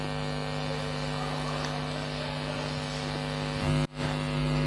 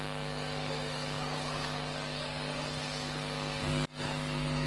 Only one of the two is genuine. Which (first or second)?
first